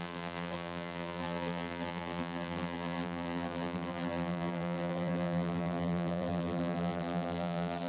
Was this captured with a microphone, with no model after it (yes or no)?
no